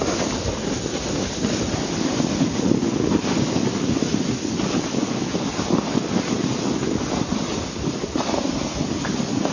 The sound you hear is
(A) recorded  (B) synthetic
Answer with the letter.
A